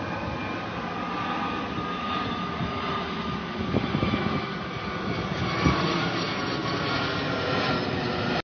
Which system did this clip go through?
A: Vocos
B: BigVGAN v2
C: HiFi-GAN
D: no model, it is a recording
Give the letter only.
D